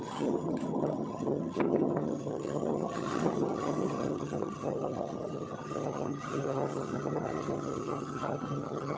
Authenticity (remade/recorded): remade